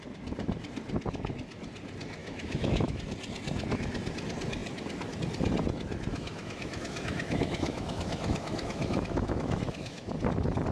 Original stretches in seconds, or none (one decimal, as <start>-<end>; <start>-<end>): 0.0-2.2; 3.0-6.1; 10.1-10.7